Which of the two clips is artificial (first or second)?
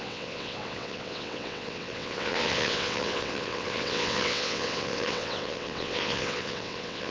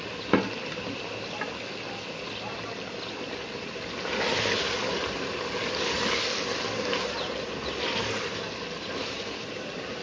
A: first